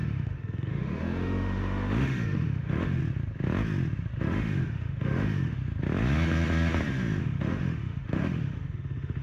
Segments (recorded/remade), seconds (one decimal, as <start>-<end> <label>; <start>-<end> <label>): 0.0-3.0 remade; 3.0-4.2 recorded; 4.2-5.6 remade; 5.6-7.2 recorded; 7.2-9.2 remade